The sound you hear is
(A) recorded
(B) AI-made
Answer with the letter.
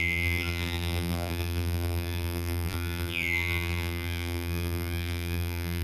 B